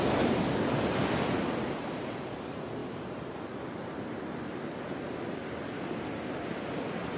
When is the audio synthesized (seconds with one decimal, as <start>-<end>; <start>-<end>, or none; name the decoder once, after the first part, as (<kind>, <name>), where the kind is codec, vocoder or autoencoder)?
0.0-2.8 (vocoder, BigVGAN v2)